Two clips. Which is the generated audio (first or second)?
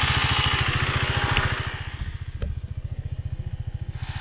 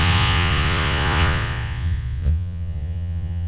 second